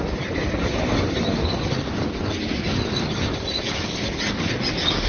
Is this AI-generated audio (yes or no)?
no